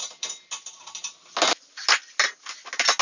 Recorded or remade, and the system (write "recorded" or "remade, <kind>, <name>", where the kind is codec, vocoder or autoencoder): recorded